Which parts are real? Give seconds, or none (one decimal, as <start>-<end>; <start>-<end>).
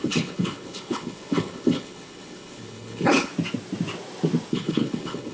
3.3-4.5